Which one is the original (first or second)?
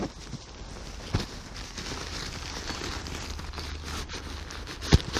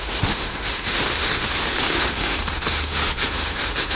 first